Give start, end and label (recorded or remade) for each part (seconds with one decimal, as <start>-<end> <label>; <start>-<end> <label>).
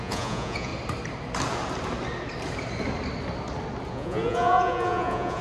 0.0-0.7 remade; 0.7-3.9 recorded; 3.9-5.4 remade